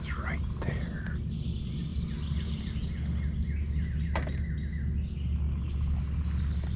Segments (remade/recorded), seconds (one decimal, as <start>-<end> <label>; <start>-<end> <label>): 0.0-6.8 recorded